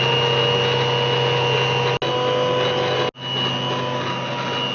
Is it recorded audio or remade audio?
recorded